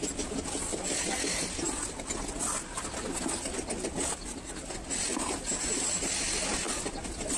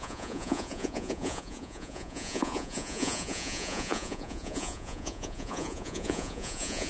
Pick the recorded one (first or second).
first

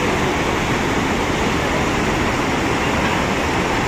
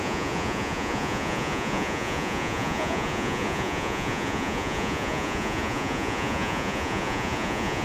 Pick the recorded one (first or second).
first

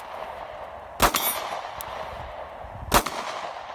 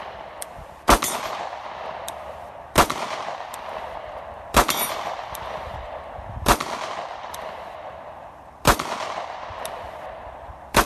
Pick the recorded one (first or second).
first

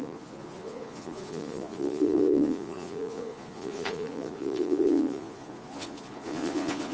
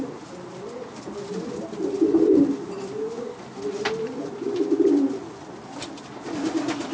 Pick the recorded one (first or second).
second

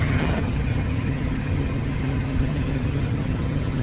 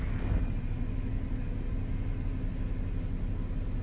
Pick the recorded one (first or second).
second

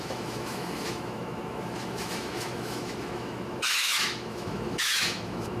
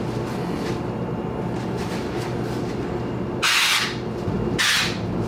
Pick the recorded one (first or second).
second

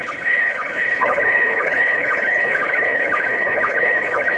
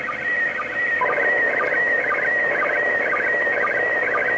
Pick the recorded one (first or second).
second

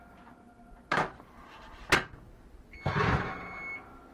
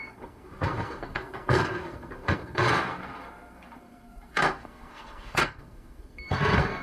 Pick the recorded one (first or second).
first